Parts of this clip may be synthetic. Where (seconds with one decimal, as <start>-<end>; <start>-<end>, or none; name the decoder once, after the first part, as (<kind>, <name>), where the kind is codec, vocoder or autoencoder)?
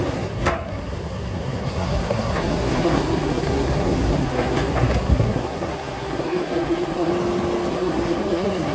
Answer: 0.0-7.1 (codec, SNAC); 7.7-8.7